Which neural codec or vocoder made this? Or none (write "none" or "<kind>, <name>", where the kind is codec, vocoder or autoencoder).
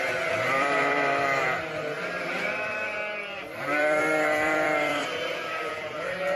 vocoder, BigVGAN v2